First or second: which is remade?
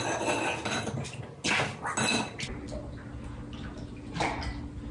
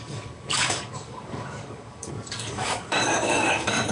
second